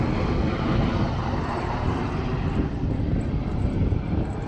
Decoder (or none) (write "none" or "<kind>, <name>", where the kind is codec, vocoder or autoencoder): none